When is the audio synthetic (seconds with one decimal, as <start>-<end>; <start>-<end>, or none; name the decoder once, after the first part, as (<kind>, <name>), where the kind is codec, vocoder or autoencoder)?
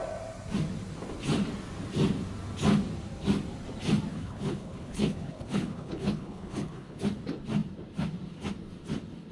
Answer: 4.1-7.0 (codec, HILCodec)